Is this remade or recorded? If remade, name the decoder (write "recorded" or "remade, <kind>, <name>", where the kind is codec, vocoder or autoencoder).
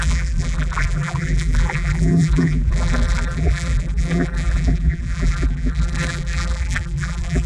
remade, vocoder, BigVGAN v2